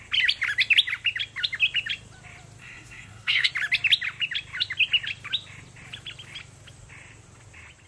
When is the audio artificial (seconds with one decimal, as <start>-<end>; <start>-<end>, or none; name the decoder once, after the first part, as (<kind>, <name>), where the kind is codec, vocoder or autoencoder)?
2.6-3.5 (codec, SNAC)